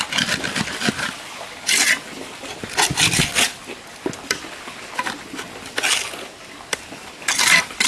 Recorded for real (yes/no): yes